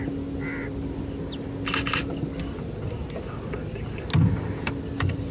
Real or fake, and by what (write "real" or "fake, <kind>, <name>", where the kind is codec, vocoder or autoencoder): real